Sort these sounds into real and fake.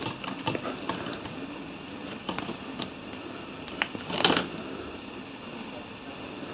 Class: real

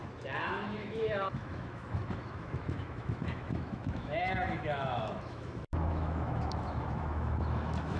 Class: fake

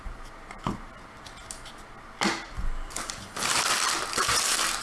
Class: real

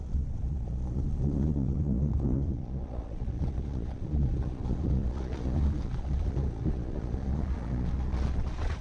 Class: fake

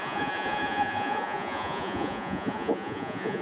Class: fake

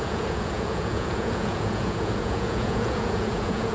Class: fake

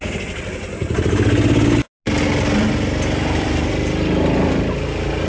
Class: real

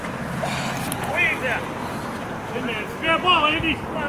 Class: real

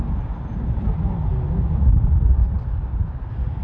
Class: real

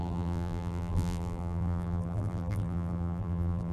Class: fake